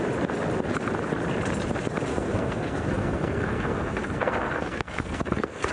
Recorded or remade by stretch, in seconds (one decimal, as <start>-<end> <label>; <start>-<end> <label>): 0.0-2.1 recorded; 2.1-5.7 remade